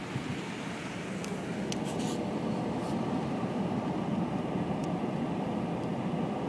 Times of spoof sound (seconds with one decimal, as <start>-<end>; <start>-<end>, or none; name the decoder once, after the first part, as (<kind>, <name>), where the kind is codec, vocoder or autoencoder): none